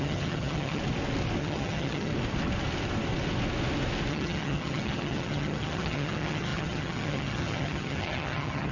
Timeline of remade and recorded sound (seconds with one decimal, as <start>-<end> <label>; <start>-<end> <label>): 0.0-0.8 remade; 0.8-1.4 recorded; 1.4-2.1 remade; 2.1-4.1 recorded; 4.1-8.7 remade